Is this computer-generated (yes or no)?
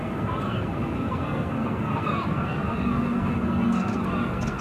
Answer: yes